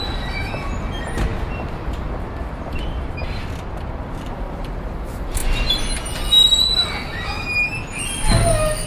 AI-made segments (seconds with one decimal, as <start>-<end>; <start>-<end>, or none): 0.0-1.3; 2.1-5.4; 6.6-7.1; 8.2-8.9